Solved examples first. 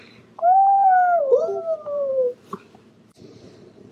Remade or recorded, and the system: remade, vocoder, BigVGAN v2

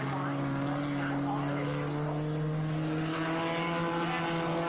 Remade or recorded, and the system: recorded